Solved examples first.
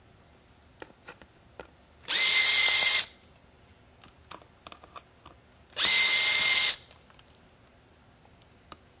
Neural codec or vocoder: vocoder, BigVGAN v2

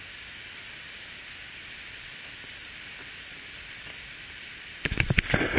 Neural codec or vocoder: vocoder, BigVGAN v2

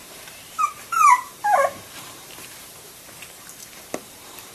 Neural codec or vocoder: vocoder, BigVGAN v2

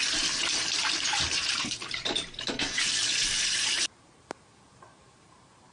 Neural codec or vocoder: vocoder, BigVGAN v2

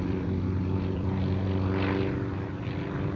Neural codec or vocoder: vocoder, BigVGAN v2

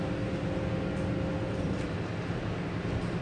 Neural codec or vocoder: none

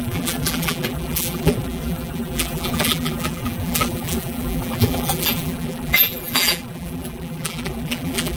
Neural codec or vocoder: vocoder, BigVGAN v2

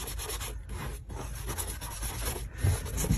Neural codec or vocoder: none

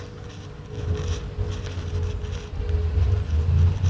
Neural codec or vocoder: none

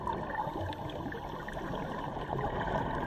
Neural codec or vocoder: none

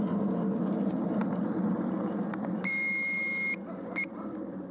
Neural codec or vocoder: none